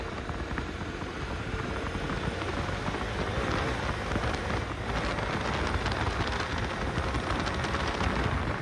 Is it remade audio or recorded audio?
recorded